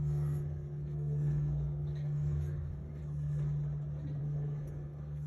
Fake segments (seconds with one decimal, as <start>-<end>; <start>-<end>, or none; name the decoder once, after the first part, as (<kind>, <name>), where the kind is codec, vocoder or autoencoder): 0.0-3.0 (codec, SNAC); 4.2-5.3